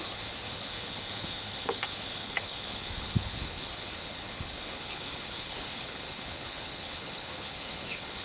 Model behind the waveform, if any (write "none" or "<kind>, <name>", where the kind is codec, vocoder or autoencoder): codec, HILCodec